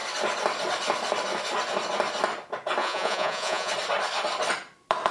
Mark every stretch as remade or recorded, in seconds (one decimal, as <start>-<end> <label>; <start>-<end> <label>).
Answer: 0.0-2.8 recorded; 2.8-3.7 remade; 3.7-5.1 recorded